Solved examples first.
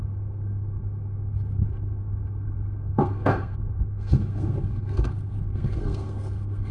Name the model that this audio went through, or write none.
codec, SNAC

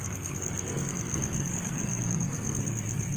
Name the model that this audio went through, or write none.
codec, SNAC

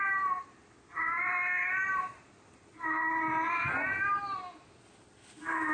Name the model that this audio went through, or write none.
none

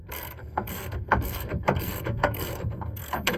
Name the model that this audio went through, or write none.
codec, SNAC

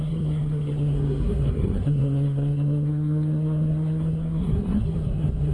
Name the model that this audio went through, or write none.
codec, SNAC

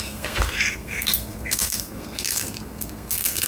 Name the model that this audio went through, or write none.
codec, SNAC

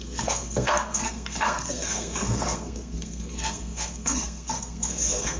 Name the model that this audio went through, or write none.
codec, SNAC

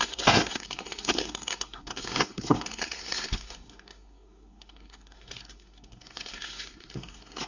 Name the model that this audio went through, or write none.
codec, SNAC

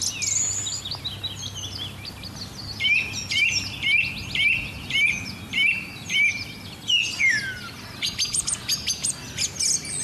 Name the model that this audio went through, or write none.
none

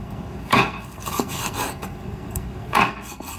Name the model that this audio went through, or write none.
codec, SNAC